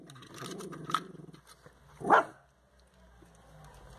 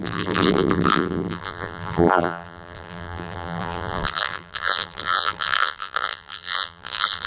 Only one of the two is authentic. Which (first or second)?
first